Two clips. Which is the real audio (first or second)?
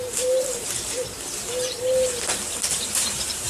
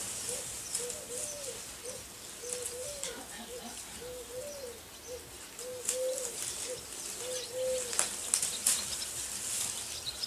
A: second